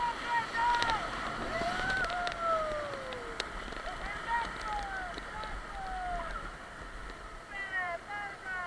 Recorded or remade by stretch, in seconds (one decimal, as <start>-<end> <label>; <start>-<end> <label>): 0.0-0.6 recorded; 0.6-2.3 remade; 2.3-7.0 recorded; 7.0-8.0 remade; 8.0-8.7 recorded